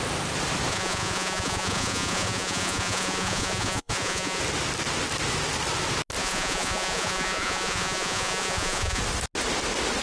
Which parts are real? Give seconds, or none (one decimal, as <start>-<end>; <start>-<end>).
0.0-0.7; 4.4-6.2; 9.0-10.0